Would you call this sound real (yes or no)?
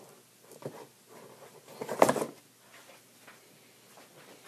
yes